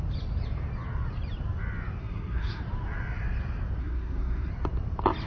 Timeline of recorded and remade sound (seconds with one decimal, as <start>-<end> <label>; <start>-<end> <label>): 0.0-2.0 recorded; 2.0-2.6 remade; 2.6-3.8 recorded; 3.8-4.5 remade; 4.5-5.3 recorded